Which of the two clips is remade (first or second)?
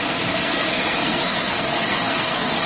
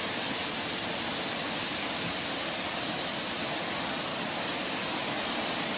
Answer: first